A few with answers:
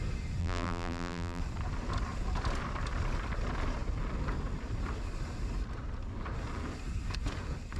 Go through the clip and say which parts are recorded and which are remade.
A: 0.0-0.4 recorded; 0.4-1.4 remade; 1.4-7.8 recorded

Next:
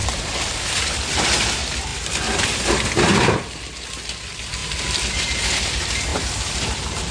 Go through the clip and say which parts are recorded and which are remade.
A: 0.0-0.6 remade; 0.6-6.1 recorded; 6.1-7.1 remade